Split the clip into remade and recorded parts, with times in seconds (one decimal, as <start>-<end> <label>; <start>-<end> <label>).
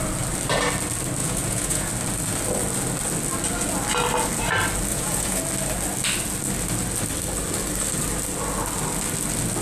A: 0.0-1.2 recorded; 1.2-1.9 remade; 1.9-4.9 recorded; 4.9-5.4 remade; 5.4-9.6 recorded